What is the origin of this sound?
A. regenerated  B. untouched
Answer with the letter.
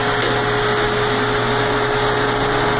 B